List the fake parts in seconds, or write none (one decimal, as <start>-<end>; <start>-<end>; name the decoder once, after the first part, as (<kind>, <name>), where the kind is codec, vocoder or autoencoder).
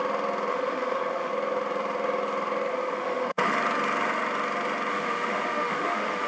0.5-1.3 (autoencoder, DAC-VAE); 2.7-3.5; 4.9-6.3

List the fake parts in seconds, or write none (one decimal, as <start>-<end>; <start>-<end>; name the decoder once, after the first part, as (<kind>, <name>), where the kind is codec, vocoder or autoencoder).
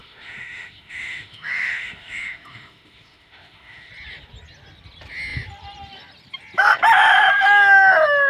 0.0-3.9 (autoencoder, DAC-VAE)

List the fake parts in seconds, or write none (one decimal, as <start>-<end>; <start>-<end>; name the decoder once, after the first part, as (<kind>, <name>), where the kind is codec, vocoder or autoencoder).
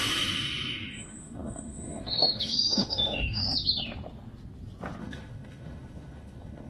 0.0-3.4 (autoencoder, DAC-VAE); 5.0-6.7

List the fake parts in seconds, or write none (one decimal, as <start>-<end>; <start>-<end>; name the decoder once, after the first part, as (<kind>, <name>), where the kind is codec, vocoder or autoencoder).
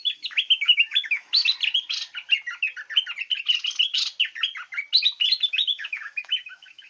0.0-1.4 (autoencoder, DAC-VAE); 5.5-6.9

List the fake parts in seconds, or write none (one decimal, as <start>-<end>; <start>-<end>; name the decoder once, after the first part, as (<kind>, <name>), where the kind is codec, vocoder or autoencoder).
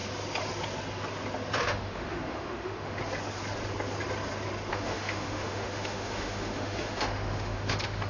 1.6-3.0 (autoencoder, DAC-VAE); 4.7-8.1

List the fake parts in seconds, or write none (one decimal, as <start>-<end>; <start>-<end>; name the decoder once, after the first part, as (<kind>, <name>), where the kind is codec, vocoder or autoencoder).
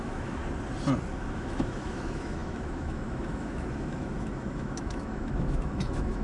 0.0-0.4 (autoencoder, DAC-VAE); 1.2-6.2